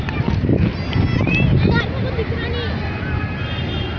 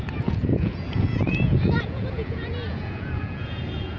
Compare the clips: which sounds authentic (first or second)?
first